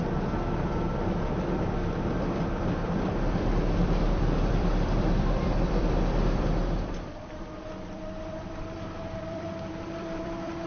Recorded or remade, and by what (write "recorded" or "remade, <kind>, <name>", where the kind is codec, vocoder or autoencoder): remade, vocoder, BigVGAN v2